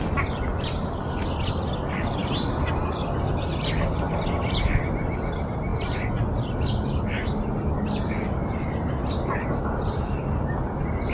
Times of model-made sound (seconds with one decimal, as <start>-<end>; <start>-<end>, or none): none